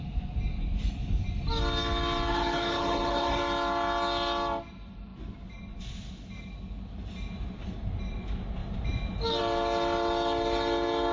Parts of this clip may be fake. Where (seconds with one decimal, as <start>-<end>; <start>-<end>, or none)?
2.3-3.4